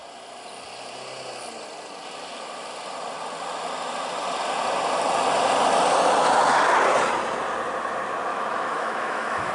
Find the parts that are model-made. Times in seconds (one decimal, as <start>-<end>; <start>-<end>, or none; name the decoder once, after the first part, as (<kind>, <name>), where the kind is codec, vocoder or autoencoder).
8.3-9.5 (autoencoder, DAC-VAE)